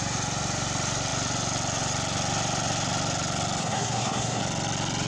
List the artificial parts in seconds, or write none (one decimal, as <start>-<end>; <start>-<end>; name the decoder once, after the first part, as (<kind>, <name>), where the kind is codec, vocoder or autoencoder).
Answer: 3.6-4.4 (codec, SNAC)